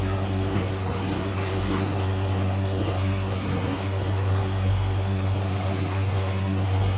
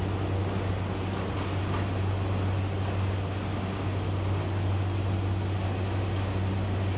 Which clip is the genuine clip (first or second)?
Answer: second